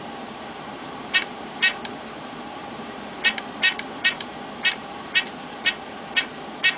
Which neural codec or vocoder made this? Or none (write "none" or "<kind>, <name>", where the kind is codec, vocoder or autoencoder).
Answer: vocoder, BigVGAN v2